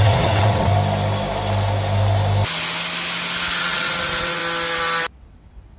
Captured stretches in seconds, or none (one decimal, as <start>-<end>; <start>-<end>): 0.7-3.6; 4.4-5.2